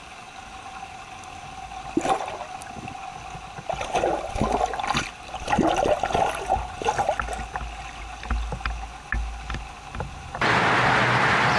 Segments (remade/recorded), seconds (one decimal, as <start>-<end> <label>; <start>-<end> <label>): 0.0-11.6 recorded